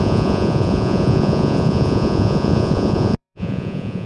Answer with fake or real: fake